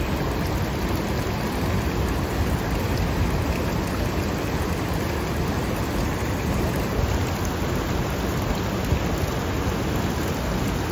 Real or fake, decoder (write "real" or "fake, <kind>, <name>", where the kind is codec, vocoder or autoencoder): real